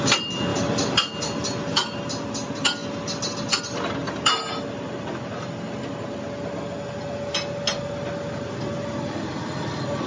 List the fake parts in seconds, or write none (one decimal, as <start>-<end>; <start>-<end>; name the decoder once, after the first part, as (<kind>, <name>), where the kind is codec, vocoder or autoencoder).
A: none